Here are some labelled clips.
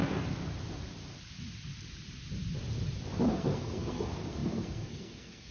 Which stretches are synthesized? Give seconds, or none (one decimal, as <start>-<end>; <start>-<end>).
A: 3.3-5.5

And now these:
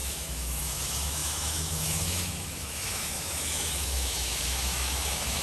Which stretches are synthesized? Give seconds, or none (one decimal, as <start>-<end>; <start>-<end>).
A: 0.0-5.4

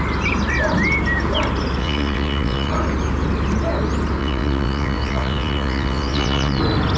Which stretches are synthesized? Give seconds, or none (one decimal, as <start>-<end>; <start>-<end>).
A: 1.8-2.7; 4.2-6.6

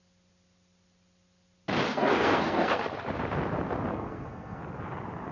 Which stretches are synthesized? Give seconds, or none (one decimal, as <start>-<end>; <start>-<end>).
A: 1.9-2.8; 3.9-4.6